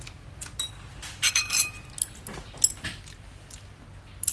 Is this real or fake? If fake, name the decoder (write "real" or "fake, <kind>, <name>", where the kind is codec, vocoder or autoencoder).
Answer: real